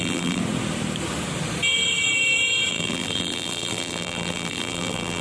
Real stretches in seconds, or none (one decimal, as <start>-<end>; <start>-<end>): 0.4-2.7

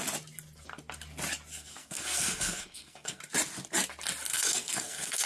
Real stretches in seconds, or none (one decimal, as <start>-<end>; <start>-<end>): 0.0-1.5; 3.2-4.3

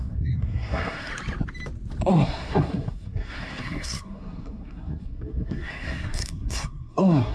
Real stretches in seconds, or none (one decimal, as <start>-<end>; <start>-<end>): 1.1-2.1